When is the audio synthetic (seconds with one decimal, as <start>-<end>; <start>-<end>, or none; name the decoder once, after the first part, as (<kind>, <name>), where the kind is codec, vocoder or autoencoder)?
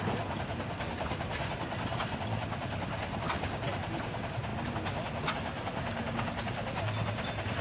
none